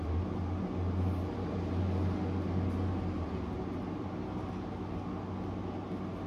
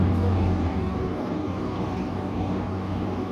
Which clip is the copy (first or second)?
second